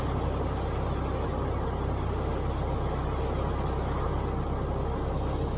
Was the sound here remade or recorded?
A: recorded